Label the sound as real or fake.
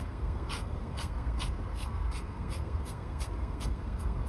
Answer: fake